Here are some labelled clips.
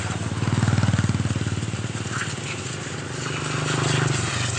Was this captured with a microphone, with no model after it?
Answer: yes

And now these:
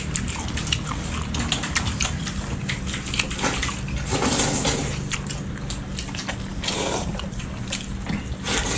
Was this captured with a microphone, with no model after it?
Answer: yes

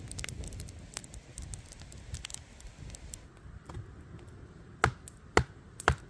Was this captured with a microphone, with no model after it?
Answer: yes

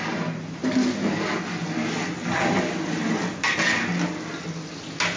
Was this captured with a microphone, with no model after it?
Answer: yes